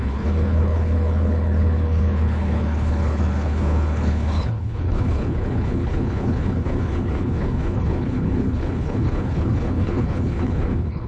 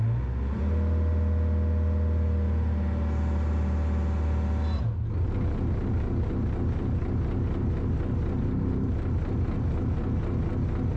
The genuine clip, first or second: second